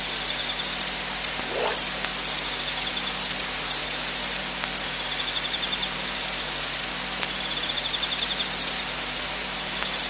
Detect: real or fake real